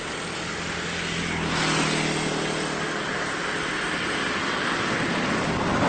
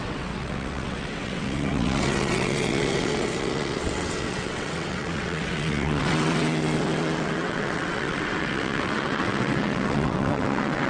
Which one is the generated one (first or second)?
second